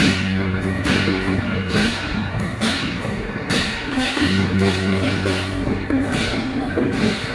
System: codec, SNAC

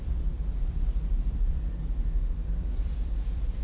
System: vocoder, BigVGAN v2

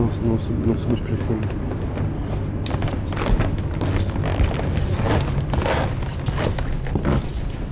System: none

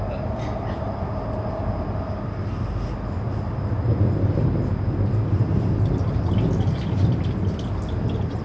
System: none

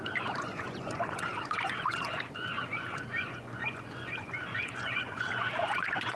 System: vocoder, Vocos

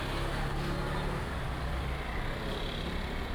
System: none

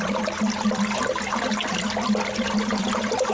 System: none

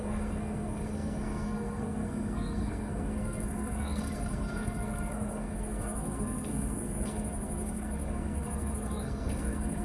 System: codec, SNAC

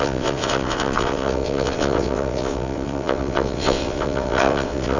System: vocoder, WaveNeXt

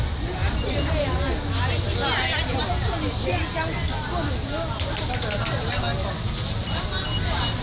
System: none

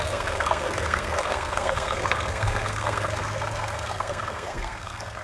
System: codec, SNAC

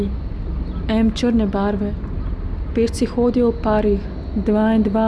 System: none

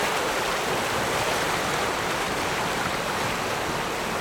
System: none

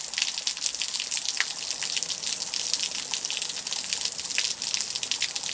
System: none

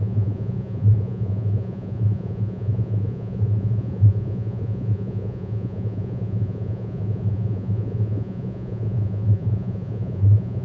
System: vocoder, Vocos